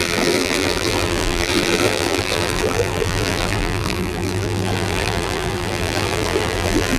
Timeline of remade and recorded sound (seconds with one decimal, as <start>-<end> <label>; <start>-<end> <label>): 0.0-7.0 remade